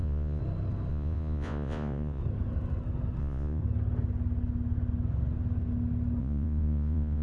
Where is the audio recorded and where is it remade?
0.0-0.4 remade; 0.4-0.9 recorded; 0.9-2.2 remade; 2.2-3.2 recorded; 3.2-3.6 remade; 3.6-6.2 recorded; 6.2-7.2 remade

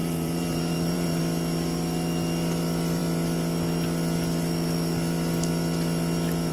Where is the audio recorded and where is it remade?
0.0-1.2 remade; 1.2-6.5 recorded

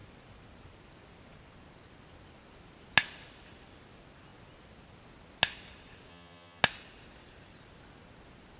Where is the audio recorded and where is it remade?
0.0-6.1 recorded; 6.1-6.6 remade; 6.6-8.6 recorded